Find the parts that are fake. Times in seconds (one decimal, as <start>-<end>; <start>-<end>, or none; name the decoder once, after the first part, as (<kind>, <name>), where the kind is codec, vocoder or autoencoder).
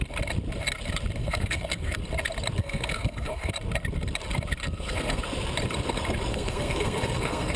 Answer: 1.2-2.0 (codec, SNAC); 2.6-3.5; 4.6-5.2; 6.3-7.6